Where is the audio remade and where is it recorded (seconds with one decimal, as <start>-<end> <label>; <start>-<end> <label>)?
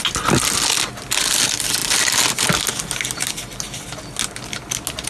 0.0-5.1 recorded